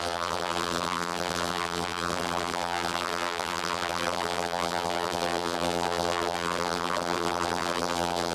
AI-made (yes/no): yes